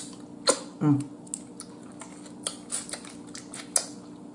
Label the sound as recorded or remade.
recorded